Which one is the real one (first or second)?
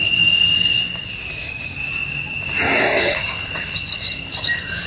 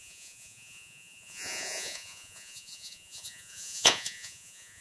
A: first